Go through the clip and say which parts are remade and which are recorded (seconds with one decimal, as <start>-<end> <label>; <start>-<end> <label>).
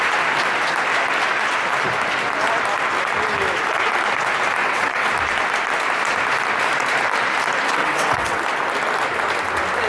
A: 0.0-4.6 recorded; 4.6-5.1 remade; 5.1-7.8 recorded; 7.8-8.4 remade; 8.4-9.9 recorded